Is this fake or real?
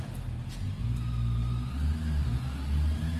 real